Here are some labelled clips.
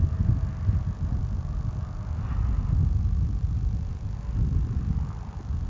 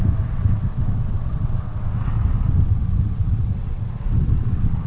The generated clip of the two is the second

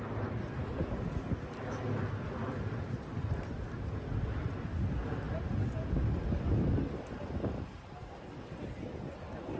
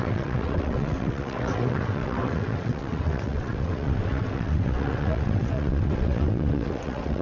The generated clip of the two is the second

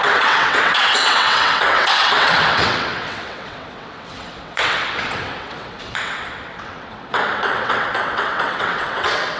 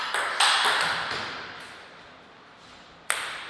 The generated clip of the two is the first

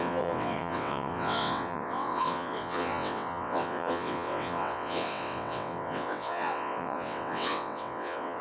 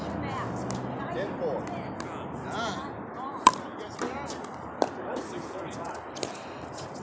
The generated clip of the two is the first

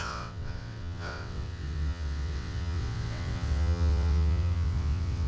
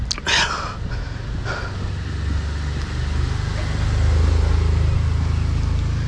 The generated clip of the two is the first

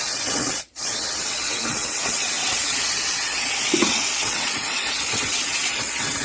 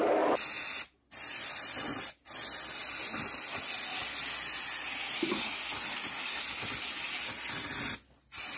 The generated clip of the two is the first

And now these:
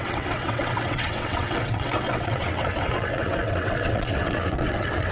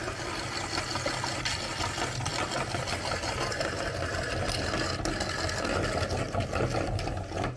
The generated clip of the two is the first